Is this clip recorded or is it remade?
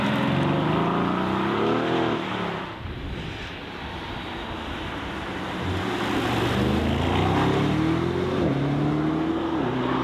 recorded